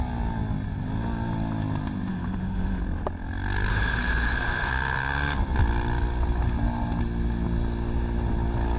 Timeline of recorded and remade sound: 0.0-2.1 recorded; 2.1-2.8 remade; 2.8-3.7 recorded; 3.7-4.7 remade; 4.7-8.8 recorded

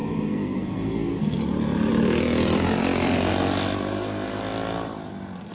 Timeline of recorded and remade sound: 0.0-1.4 remade; 1.4-5.5 recorded

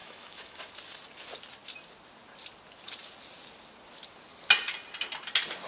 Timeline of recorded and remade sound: 0.0-0.6 remade; 0.6-5.7 recorded